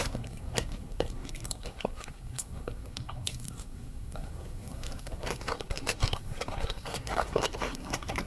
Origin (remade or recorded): remade